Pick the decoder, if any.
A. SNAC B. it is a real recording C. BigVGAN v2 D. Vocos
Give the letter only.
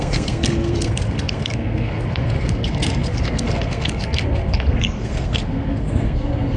A